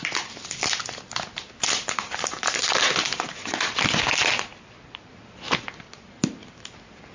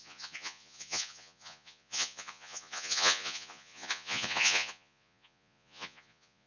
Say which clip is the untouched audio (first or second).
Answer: first